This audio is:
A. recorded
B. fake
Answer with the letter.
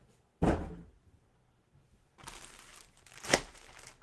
A